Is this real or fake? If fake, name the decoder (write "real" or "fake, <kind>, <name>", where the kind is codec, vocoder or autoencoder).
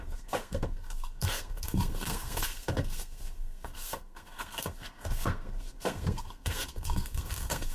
fake, codec, SNAC